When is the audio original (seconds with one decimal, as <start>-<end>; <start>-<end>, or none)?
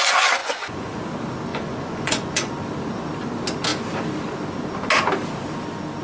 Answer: 0.0-0.4; 1.0-1.5; 2.5-6.0